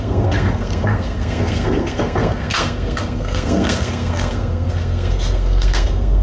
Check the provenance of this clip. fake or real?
fake